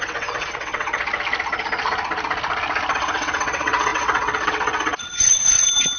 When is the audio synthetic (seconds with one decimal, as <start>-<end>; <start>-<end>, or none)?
0.0-1.0; 2.9-6.0